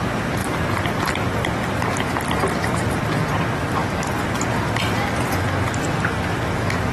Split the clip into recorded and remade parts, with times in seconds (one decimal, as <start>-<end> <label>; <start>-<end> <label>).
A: 0.0-0.4 recorded; 0.4-1.4 remade; 1.4-6.9 recorded